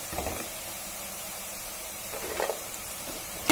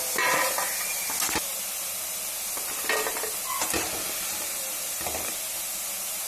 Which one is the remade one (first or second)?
first